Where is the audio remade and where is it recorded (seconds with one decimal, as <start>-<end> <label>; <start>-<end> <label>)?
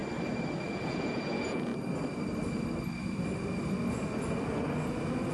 0.0-0.6 recorded; 0.6-1.7 remade; 1.7-5.3 recorded